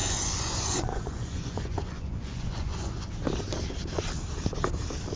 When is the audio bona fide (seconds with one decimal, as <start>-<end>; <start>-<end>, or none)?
3.1-5.2